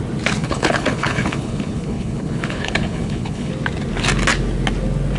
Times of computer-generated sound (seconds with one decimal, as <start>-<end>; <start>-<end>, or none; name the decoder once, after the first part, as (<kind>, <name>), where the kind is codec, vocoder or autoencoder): 0.4-3.5 (codec, HILCodec)